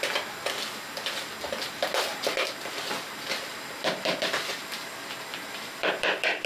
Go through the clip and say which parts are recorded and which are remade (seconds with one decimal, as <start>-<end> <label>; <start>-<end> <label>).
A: 0.0-2.3 recorded; 2.3-6.5 remade